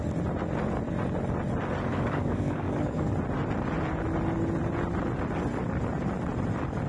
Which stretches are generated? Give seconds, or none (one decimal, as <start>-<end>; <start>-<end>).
1.9-3.1